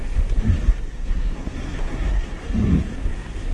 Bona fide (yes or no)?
no